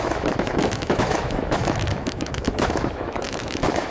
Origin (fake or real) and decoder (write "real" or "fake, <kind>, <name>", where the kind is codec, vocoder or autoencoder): fake, autoencoder, DAC-VAE